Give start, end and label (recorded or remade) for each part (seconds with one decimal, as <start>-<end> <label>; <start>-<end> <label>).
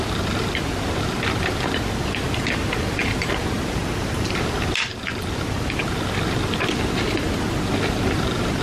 0.0-3.8 recorded; 3.8-4.7 remade; 4.7-8.6 recorded